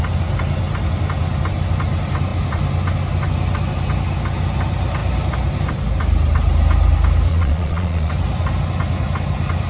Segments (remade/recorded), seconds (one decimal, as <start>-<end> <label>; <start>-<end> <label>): 0.0-7.3 recorded; 7.3-8.1 remade; 8.1-9.7 recorded